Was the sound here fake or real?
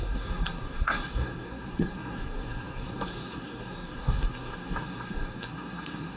fake